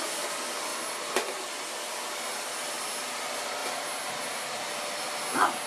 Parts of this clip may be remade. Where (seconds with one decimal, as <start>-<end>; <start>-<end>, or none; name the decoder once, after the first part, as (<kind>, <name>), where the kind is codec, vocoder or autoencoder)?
none